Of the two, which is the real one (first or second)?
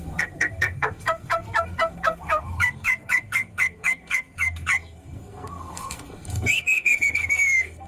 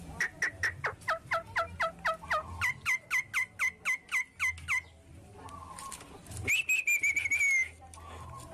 second